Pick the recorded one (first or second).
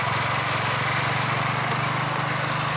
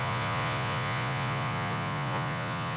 first